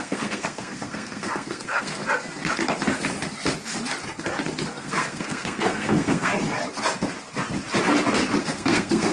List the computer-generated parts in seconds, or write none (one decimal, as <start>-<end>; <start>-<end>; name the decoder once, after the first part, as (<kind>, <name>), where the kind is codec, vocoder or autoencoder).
0.0-2.0 (codec, SNAC); 4.8-6.3; 8.4-9.1